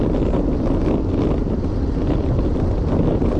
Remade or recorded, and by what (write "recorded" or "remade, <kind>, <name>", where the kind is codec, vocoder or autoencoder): recorded